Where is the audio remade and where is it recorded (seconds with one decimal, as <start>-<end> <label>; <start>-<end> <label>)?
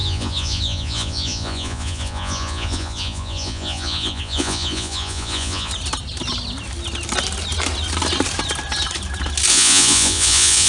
0.0-5.7 remade; 5.7-9.5 recorded; 9.5-10.7 remade